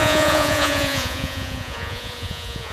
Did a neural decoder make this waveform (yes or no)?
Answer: yes